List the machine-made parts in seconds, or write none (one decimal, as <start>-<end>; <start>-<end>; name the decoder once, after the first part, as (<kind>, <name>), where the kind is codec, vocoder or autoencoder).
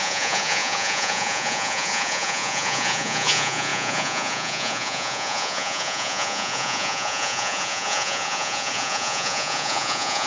0.0-10.3 (vocoder, Vocos)